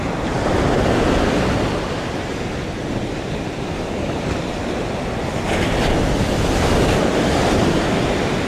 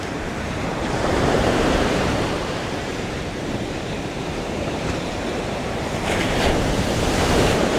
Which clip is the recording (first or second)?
first